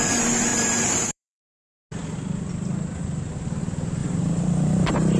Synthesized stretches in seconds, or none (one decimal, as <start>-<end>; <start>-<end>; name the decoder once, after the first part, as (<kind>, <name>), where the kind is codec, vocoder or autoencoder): 0.5-1.4 (vocoder, BigVGAN v2); 4.0-5.2